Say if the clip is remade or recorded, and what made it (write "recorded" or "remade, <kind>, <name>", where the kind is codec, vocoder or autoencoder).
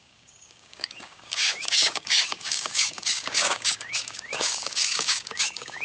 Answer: remade, codec, DAC